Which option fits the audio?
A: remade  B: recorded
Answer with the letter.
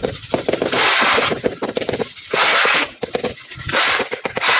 B